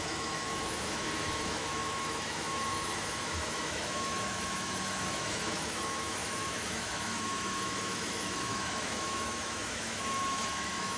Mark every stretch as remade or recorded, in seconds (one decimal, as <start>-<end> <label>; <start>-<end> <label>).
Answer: 0.0-11.0 remade